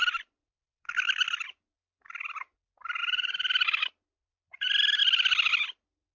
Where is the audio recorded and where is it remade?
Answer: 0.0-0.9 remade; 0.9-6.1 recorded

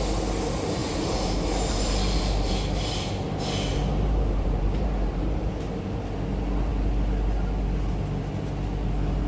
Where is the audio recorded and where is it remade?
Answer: 0.0-0.8 recorded; 0.8-2.5 remade; 2.5-3.7 recorded; 3.7-5.5 remade; 5.5-9.3 recorded

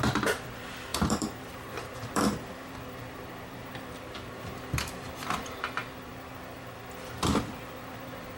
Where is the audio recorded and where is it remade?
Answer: 0.0-8.4 remade

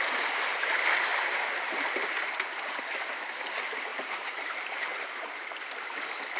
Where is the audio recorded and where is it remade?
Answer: 0.0-1.1 recorded; 1.1-1.9 remade; 1.9-3.9 recorded; 3.9-5.5 remade; 5.5-6.4 recorded